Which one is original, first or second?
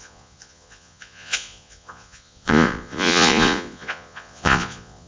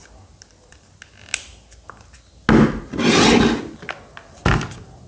second